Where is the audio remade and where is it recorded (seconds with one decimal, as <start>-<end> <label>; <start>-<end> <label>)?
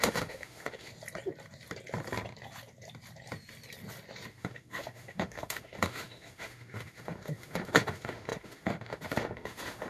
0.0-0.9 remade; 0.9-4.3 recorded; 4.3-9.9 remade